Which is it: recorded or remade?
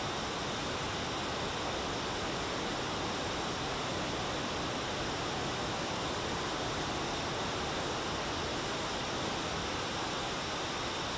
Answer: recorded